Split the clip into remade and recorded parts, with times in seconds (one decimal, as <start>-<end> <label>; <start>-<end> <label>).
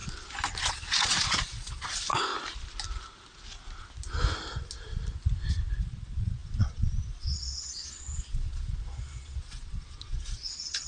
0.0-0.6 recorded; 0.6-2.3 remade; 2.3-5.7 recorded; 5.7-10.9 remade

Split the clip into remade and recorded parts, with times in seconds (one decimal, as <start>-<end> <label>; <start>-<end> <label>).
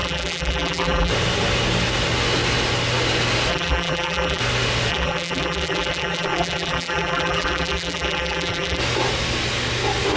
0.0-1.1 remade; 1.1-3.5 recorded; 3.5-4.4 remade; 4.4-4.9 recorded; 4.9-8.8 remade; 8.8-10.2 recorded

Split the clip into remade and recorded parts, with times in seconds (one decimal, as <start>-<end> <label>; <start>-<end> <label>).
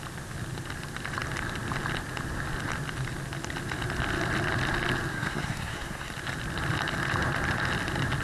0.0-5.1 recorded; 5.1-6.1 remade; 6.1-8.2 recorded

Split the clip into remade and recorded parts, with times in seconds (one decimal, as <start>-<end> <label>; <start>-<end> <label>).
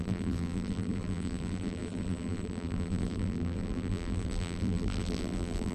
0.0-5.7 remade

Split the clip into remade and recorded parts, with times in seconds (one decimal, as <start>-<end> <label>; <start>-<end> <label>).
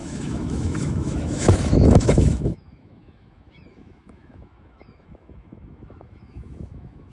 0.0-7.1 remade